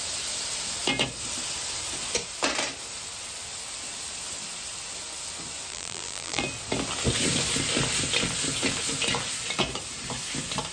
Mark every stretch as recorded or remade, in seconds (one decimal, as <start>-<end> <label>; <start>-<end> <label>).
0.0-5.7 recorded; 5.7-6.4 remade; 6.4-10.7 recorded